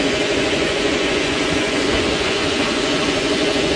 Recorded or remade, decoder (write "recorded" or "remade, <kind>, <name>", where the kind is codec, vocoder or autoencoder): remade, vocoder, Vocos